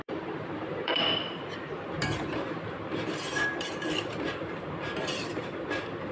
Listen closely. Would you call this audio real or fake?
fake